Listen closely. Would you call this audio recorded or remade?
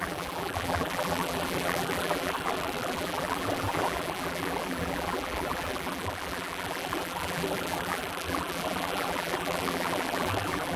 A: remade